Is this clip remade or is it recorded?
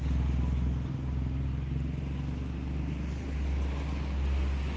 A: recorded